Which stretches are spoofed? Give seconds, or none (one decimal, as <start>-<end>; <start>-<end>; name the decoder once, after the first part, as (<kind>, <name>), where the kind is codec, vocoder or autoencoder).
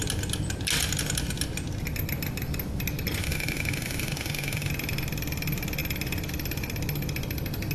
3.2-4.7 (autoencoder, DAC-VAE)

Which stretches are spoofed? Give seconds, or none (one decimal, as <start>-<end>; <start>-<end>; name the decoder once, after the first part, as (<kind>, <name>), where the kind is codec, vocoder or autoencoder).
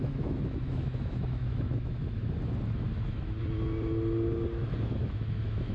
0.0-2.2 (autoencoder, DAC-VAE); 2.9-3.4; 4.9-5.7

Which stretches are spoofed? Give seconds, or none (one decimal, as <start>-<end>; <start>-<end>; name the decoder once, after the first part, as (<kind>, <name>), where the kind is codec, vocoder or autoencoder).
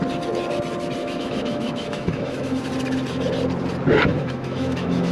1.0-2.6 (autoencoder, DAC-VAE); 4.1-5.1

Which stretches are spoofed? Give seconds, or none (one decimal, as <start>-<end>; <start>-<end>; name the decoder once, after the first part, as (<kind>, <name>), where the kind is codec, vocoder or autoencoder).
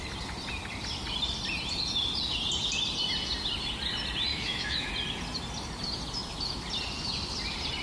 4.3-4.9 (autoencoder, DAC-VAE)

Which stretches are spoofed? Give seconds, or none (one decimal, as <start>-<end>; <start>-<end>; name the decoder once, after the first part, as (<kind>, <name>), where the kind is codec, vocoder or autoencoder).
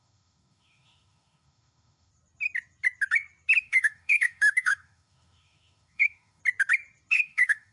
0.0-2.1 (autoencoder, DAC-VAE); 3.6-6.4; 7.1-7.7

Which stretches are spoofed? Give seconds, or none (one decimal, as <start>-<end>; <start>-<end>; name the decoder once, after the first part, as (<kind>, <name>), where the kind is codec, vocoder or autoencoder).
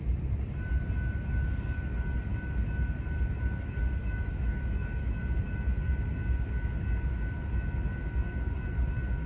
4.0-5.2 (autoencoder, DAC-VAE)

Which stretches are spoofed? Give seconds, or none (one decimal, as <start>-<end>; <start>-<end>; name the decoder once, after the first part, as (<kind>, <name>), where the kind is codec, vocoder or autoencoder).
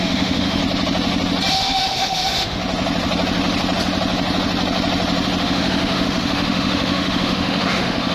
0.0-0.6 (autoencoder, DAC-VAE); 1.5-2.6; 5.4-8.1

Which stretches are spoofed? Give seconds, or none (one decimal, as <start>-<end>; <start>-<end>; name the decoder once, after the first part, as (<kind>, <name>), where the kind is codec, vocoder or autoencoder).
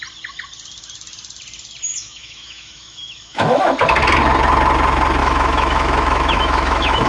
1.9-3.6 (autoencoder, DAC-VAE); 5.2-7.1